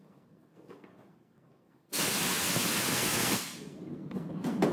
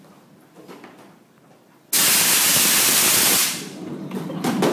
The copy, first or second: first